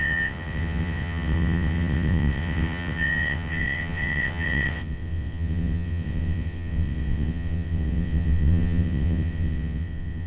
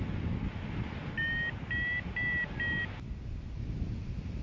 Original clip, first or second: second